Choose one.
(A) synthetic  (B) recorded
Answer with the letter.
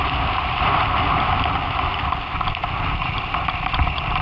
B